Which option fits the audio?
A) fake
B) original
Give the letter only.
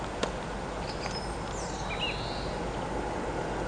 B